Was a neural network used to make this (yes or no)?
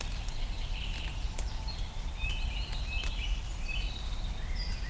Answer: no